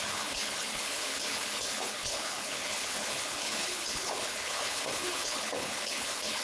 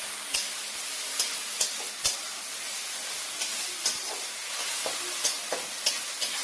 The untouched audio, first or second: second